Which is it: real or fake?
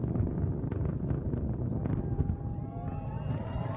fake